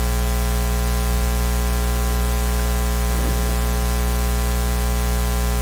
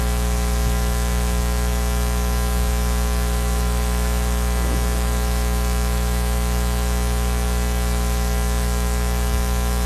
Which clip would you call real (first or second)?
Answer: first